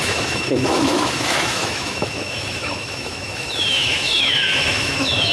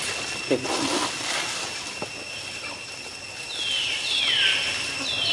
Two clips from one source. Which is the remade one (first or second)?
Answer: first